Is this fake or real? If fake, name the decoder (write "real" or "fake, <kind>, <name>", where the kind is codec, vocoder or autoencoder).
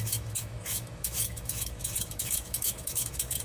fake, autoencoder, DAC-VAE